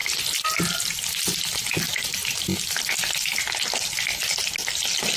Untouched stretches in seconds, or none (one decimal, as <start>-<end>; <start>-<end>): 0.0-5.2